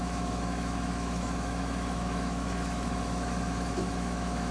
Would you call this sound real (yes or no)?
no